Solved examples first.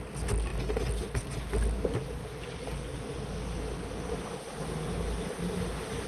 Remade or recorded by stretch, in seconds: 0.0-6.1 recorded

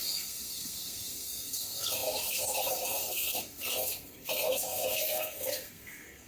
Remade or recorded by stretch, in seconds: 0.0-6.3 remade

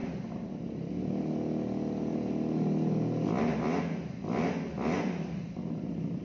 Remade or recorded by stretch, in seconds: 0.0-6.2 recorded